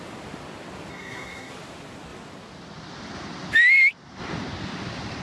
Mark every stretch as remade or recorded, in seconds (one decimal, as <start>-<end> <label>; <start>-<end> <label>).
0.0-0.9 recorded; 0.9-1.5 remade; 1.5-5.2 recorded